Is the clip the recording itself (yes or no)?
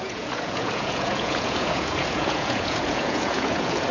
no